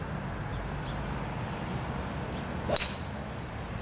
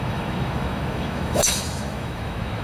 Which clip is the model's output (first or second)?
second